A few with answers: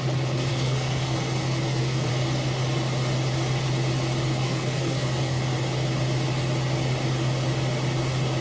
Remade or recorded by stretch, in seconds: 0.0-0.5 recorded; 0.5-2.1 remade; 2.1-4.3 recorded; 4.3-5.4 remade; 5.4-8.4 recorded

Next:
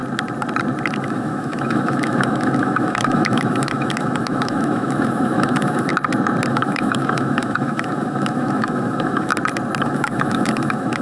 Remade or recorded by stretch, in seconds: 0.0-1.0 recorded; 1.0-5.9 remade; 5.9-6.5 recorded; 6.5-9.3 remade; 9.3-9.8 recorded; 9.8-11.0 remade

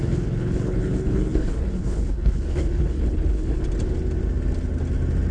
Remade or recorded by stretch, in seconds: 0.0-3.6 remade; 3.6-5.3 recorded